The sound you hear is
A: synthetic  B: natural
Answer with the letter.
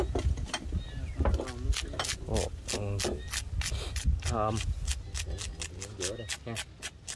B